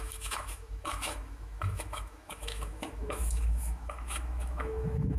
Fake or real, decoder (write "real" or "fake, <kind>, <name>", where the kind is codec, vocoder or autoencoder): fake, autoencoder, DAC-VAE